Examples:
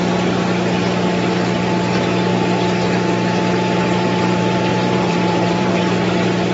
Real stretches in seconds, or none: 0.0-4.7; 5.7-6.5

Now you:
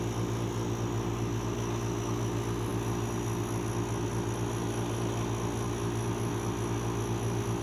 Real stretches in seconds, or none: 0.0-7.6

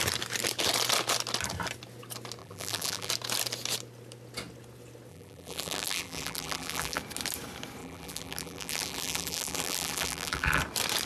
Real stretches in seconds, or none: 0.0-2.4; 3.1-5.1; 7.0-7.8; 10.6-11.1

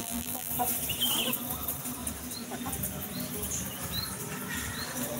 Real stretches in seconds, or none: 0.5-5.2